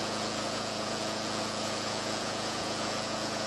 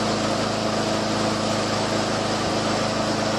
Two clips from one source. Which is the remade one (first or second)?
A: first